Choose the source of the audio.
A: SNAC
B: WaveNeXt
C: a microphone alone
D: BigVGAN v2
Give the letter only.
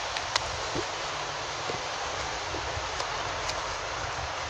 C